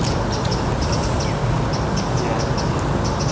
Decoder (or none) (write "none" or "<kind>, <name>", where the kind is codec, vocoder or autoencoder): none